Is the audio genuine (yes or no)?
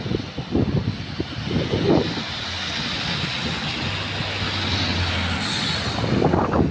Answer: yes